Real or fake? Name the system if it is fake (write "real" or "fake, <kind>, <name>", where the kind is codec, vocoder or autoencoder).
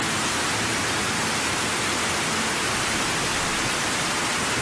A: real